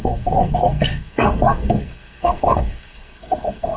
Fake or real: fake